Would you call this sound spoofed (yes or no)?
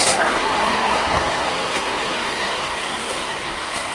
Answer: yes